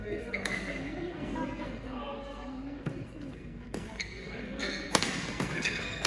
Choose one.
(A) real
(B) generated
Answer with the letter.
B